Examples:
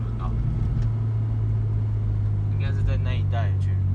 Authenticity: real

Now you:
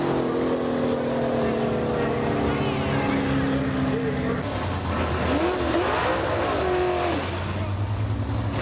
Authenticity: real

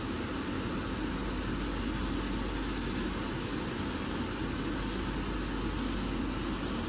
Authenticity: real